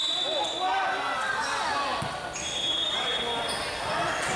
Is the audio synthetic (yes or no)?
no